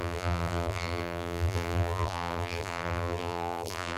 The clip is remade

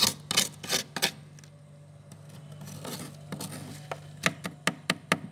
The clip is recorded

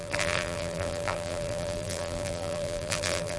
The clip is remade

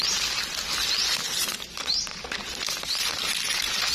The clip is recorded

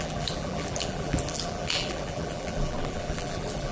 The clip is remade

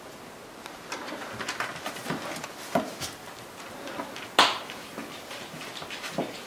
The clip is recorded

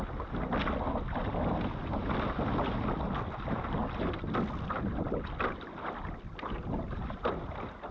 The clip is recorded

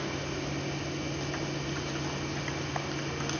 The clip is recorded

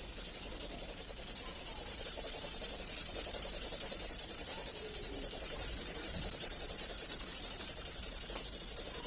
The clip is remade